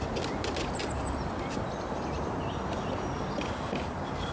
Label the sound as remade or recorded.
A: recorded